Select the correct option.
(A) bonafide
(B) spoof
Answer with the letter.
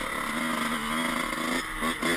A